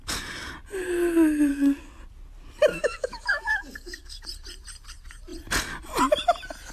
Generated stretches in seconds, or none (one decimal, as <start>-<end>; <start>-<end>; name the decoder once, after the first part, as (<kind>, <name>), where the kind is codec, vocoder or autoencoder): 1.5-2.0 (codec, DAC); 2.7-4.2